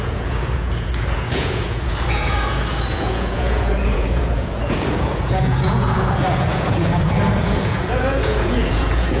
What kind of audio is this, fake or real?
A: fake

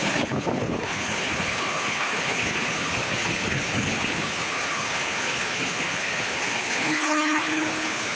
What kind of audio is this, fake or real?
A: fake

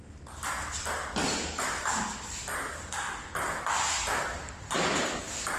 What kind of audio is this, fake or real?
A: real